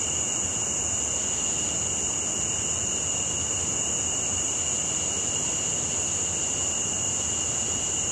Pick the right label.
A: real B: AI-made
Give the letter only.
A